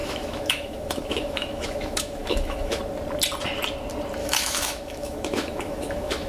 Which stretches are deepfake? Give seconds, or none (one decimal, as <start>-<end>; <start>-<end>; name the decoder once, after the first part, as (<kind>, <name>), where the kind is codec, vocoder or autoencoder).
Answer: 0.0-2.8 (autoencoder, DAC-VAE); 4.2-6.3